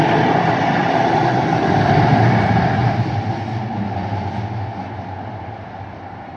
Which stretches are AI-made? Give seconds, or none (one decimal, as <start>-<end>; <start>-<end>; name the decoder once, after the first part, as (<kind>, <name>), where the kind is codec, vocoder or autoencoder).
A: none